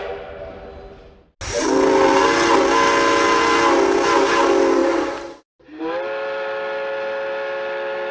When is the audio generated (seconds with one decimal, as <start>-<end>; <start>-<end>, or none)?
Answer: none